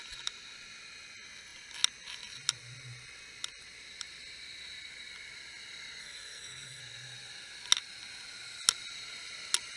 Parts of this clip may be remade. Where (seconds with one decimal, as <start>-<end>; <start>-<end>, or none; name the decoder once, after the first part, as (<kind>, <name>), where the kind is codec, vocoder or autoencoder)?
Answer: 6.0-6.8 (codec, SNAC)